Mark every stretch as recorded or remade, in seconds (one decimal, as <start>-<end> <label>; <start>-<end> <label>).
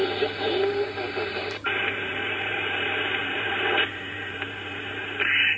0.0-1.1 recorded; 1.1-5.0 remade; 5.0-5.6 recorded